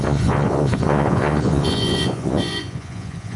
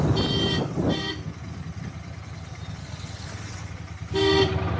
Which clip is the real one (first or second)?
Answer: second